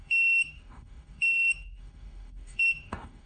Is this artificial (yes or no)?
yes